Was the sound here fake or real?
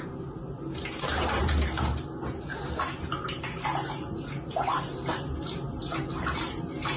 real